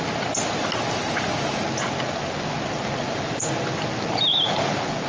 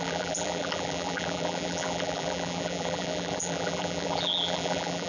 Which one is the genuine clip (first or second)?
first